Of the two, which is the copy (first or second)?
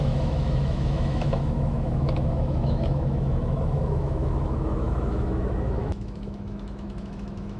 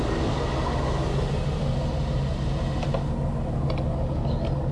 first